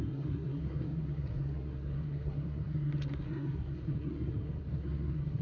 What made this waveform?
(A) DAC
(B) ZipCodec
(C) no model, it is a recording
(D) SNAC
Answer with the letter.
D